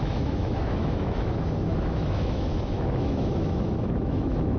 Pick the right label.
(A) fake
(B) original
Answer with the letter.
A